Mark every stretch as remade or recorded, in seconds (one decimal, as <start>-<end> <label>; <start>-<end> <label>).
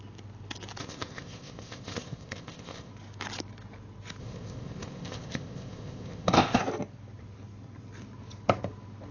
0.0-0.8 recorded; 0.8-2.9 remade; 2.9-4.2 recorded; 4.2-6.6 remade; 6.6-9.1 recorded